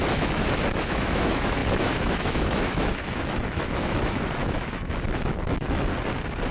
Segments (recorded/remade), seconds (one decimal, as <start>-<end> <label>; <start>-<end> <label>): 0.0-5.9 remade; 5.9-6.5 recorded